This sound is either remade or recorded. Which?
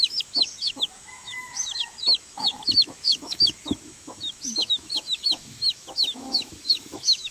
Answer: remade